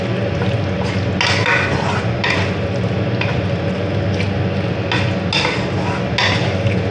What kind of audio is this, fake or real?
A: real